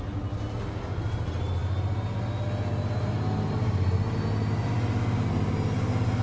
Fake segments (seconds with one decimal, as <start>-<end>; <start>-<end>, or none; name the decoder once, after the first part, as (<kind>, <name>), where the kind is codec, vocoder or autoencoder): none